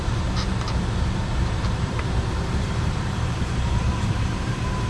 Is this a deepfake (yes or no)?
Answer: yes